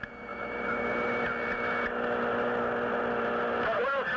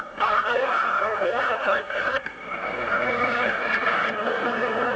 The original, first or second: first